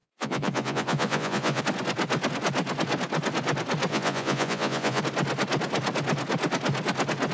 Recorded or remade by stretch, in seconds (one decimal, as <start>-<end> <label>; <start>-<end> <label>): 0.0-1.6 remade; 1.6-3.9 recorded; 3.9-5.0 remade; 5.0-7.3 recorded

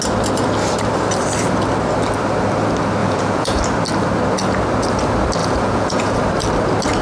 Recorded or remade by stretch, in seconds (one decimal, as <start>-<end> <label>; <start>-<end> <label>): 0.0-3.0 recorded; 3.0-3.6 remade; 3.6-5.4 recorded; 5.4-6.2 remade; 6.2-7.0 recorded

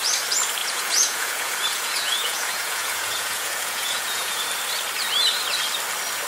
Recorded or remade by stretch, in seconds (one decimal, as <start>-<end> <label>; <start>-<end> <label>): 0.0-0.6 recorded; 0.6-4.4 remade; 4.4-6.3 recorded

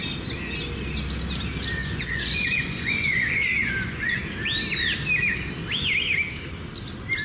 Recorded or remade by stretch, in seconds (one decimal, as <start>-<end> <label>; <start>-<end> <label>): 0.0-1.8 recorded; 1.8-4.2 remade; 4.2-7.2 recorded

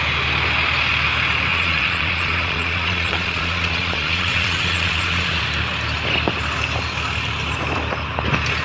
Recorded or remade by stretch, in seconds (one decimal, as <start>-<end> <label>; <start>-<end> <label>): 0.0-1.5 recorded; 1.5-5.4 remade; 5.4-8.6 recorded

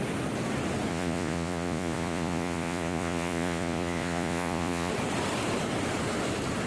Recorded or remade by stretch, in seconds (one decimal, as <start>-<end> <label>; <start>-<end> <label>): 0.0-0.9 recorded; 0.9-4.9 remade; 4.9-6.7 recorded

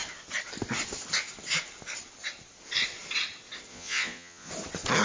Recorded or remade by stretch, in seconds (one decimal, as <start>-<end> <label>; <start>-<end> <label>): 0.0-3.7 recorded; 3.7-4.5 remade; 4.5-5.0 recorded

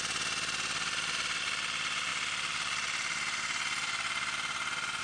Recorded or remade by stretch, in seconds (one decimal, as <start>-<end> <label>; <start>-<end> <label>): 0.0-5.0 recorded